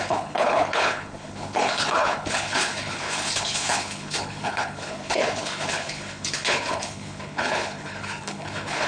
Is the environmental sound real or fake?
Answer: fake